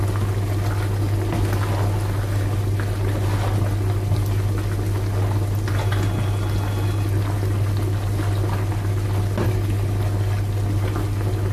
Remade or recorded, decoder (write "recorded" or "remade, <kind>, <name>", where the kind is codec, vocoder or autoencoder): recorded